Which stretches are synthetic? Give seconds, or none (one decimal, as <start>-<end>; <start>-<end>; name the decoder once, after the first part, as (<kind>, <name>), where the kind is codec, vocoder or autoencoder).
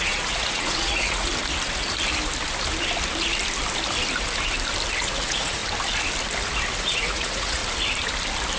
0.0-1.3 (vocoder, Vocos); 5.0-5.6; 6.8-7.6